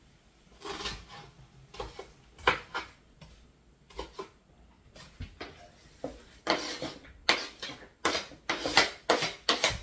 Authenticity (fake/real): real